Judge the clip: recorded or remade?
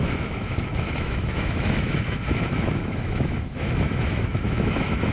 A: remade